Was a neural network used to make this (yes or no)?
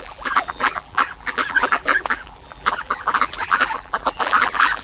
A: yes